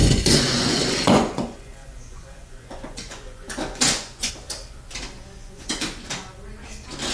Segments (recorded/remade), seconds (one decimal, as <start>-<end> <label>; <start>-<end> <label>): 0.0-4.3 remade; 4.3-5.4 recorded; 5.4-6.1 remade; 6.1-7.1 recorded